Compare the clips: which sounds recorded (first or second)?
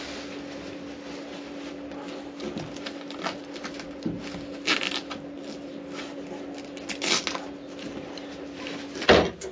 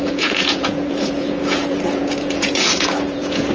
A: first